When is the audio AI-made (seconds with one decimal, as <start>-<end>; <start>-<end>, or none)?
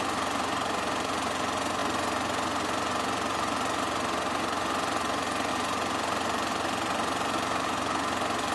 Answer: none